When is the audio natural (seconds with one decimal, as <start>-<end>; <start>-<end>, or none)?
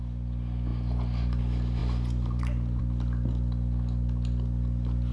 0.0-0.7; 1.4-1.8; 2.8-5.1